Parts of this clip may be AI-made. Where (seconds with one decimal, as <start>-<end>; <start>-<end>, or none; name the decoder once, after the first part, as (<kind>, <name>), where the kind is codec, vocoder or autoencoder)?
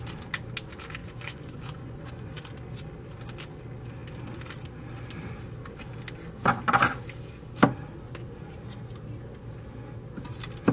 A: 1.0-2.3 (vocoder, Vocos)